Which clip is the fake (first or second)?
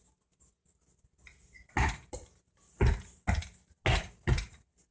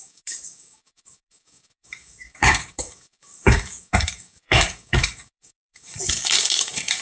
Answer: second